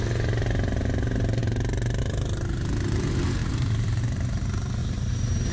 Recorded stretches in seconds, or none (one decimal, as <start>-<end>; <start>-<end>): 0.0-3.4; 4.0-4.8

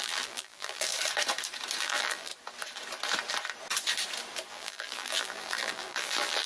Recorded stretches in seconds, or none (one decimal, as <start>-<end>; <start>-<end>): 0.9-1.8; 2.3-4.5

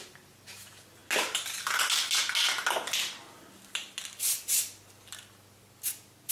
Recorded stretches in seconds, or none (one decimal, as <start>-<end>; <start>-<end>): 0.0-6.3